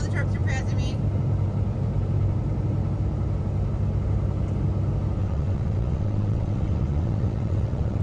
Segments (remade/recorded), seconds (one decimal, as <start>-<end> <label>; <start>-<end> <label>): 0.0-5.2 recorded; 5.2-8.0 remade